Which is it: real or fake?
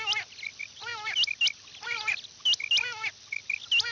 real